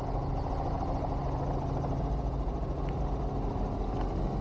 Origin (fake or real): real